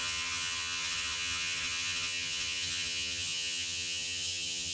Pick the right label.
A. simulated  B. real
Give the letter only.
A